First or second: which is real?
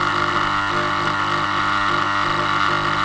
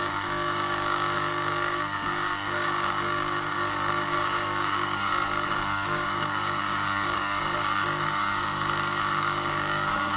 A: first